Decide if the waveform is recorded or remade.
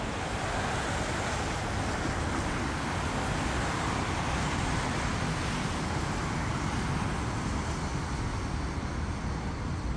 recorded